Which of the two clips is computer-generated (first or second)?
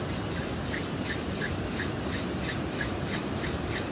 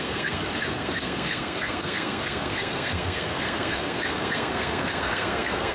second